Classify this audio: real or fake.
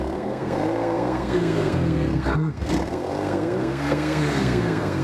fake